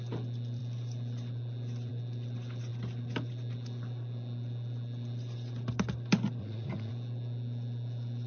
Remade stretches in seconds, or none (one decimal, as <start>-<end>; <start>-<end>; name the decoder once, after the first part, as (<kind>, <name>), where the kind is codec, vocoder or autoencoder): 6.4-6.9 (vocoder, Vocos)